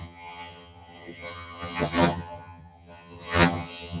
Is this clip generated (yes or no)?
yes